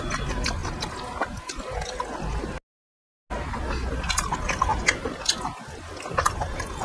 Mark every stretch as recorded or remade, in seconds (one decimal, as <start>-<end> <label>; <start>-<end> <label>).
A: 0.0-0.6 remade; 0.6-3.9 recorded; 3.9-6.8 remade